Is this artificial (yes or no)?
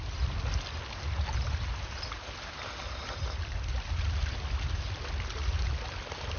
no